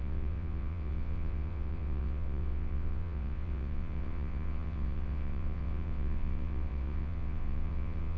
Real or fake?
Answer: fake